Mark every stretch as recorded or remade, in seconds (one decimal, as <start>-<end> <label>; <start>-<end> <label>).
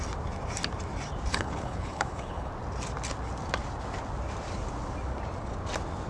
0.0-1.3 recorded; 1.3-2.5 remade; 2.5-6.1 recorded